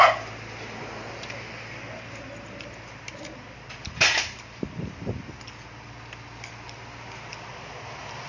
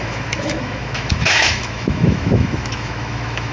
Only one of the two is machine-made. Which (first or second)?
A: second